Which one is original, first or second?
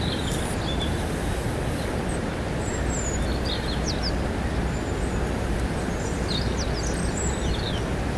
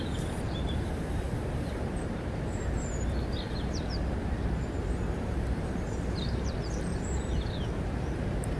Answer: first